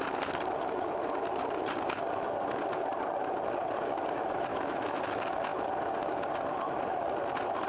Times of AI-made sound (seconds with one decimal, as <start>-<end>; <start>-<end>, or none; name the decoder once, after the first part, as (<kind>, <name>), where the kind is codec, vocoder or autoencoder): 4.5-5.0 (autoencoder, DAC-VAE)